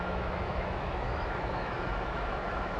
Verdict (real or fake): fake